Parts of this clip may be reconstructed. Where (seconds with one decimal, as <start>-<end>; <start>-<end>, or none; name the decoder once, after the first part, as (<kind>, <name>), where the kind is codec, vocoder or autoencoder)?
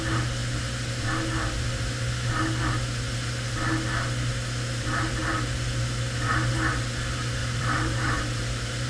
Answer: 7.4-8.9 (vocoder, BigVGAN v2)